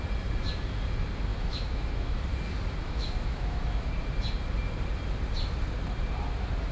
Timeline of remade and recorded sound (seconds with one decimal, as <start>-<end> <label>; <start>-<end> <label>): 0.0-1.3 recorded; 1.3-2.2 remade; 2.2-2.8 recorded; 2.8-3.9 remade; 3.9-6.7 recorded